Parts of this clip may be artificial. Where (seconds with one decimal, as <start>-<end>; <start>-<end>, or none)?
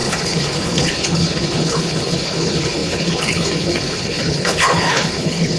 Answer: 0.0-5.6